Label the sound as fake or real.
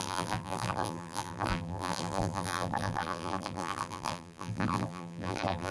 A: fake